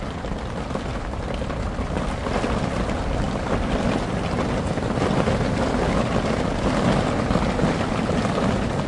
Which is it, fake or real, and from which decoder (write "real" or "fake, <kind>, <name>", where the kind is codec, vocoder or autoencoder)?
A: real